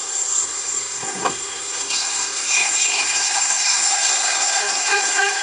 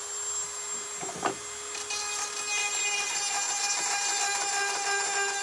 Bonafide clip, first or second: second